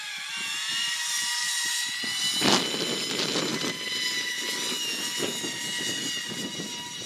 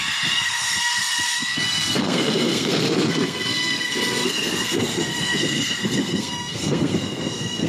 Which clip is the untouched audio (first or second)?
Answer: first